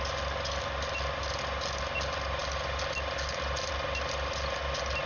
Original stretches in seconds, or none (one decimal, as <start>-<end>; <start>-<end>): 0.0-5.1